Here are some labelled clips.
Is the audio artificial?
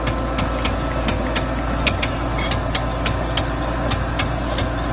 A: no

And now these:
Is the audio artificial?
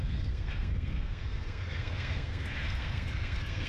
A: yes